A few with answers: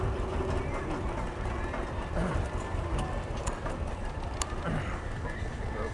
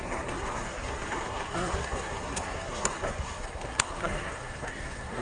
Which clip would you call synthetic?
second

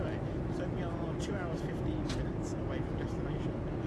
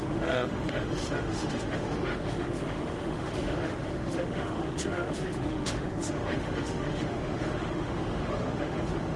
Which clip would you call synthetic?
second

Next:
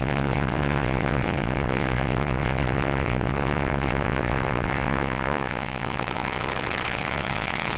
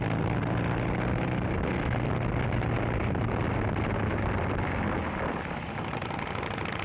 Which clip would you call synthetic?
first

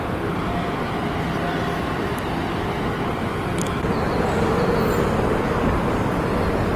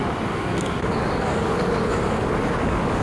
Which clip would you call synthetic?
second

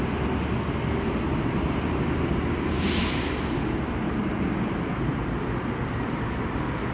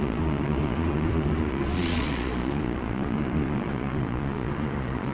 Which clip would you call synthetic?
second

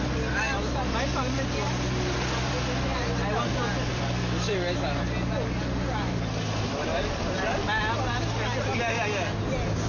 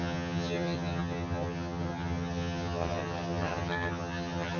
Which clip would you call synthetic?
second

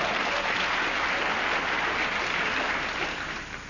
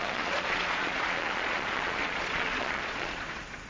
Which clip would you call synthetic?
second